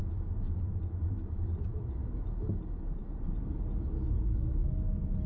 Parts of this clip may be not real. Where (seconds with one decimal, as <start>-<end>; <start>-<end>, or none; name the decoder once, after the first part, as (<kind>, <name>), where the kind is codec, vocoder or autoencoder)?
0.0-0.6 (autoencoder, DAC-VAE)